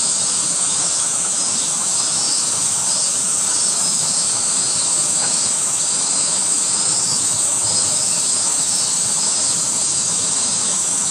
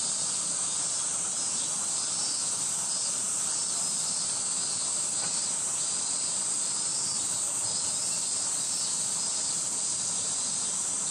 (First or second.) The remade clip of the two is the first